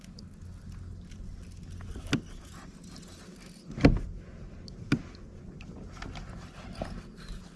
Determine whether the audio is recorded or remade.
recorded